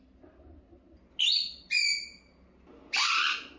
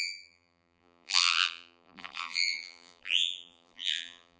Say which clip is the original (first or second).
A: first